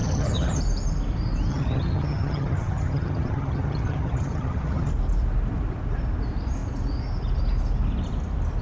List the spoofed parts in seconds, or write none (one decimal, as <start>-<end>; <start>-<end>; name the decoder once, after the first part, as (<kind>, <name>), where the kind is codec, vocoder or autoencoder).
0.0-0.6 (vocoder, HiFi-GAN); 1.5-4.9